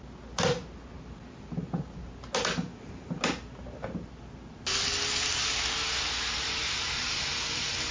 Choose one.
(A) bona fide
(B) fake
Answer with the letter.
A